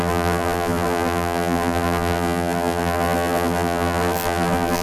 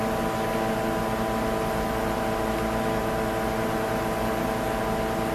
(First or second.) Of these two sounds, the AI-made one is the first